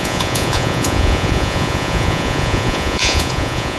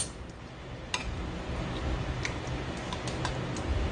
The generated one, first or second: first